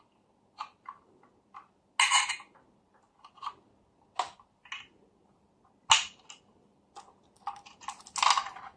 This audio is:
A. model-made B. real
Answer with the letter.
B